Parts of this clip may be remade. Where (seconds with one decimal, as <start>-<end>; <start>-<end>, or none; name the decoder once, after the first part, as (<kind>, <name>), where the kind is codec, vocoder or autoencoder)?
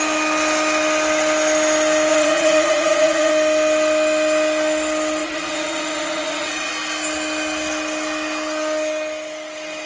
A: 2.1-3.3 (vocoder, Vocos); 5.2-6.7